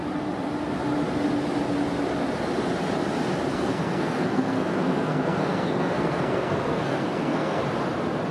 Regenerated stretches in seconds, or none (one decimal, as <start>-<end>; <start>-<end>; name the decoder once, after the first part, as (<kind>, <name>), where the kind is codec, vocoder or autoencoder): 3.5-7.6 (codec, SNAC)

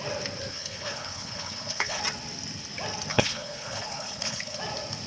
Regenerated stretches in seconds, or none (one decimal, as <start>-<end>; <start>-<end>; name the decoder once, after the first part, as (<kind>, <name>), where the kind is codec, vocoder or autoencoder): 0.5-2.0 (codec, HILCodec); 3.1-4.6

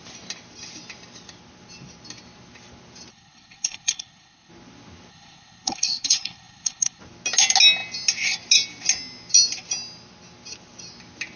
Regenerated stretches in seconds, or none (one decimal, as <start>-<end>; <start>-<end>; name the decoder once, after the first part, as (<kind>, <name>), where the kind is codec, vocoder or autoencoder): 3.1-4.5 (codec, HILCodec); 5.1-7.0

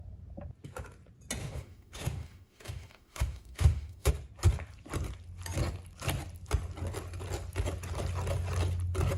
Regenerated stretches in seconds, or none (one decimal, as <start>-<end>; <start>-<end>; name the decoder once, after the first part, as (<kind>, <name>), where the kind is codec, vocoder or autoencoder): 1.4-4.1 (autoencoder, DAC-VAE)

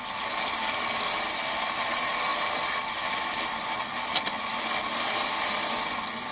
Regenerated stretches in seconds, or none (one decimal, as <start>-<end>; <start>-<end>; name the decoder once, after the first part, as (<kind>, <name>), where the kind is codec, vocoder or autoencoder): none

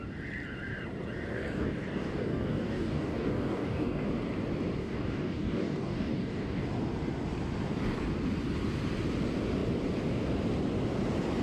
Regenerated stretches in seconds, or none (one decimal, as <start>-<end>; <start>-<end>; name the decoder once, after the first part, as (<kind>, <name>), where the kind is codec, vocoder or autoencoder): 1.3-4.1 (codec, DAC); 4.8-6.6

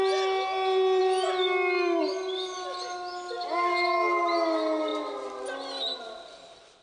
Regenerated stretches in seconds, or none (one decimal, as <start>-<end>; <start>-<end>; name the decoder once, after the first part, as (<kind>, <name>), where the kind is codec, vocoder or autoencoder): none